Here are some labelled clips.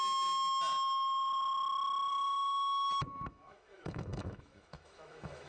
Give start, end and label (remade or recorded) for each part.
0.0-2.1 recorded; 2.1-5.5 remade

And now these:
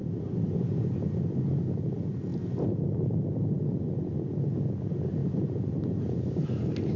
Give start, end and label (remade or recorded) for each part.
0.0-5.2 recorded; 5.2-5.8 remade; 5.8-7.0 recorded

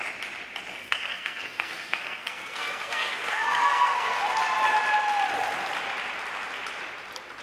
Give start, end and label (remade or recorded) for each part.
0.0-0.8 recorded; 0.8-4.2 remade; 4.2-7.4 recorded

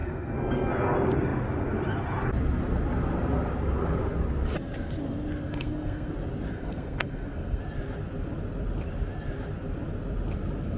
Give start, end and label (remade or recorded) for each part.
0.0-0.7 remade; 0.7-5.4 recorded; 5.4-6.1 remade; 6.1-6.5 recorded; 6.5-7.6 remade; 7.6-10.8 recorded

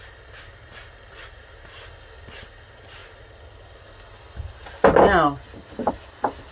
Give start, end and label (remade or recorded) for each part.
0.0-6.5 recorded

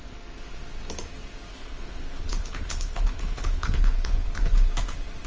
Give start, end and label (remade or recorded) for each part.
0.0-1.5 recorded; 1.5-4.7 remade; 4.7-5.3 recorded

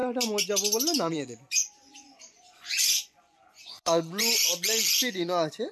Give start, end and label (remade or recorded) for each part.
0.0-1.1 recorded; 1.1-5.7 remade